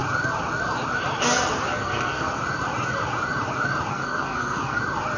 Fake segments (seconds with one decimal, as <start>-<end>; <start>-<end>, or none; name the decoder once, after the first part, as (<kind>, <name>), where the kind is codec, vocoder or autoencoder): 1.7-2.4 (codec, SNAC); 3.9-4.8